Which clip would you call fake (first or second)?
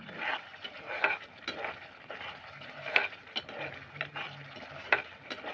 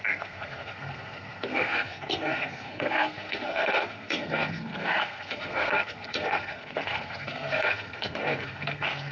second